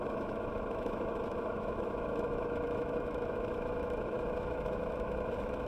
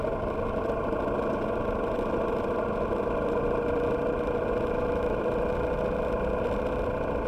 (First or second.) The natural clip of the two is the second